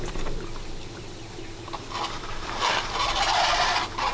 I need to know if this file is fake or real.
real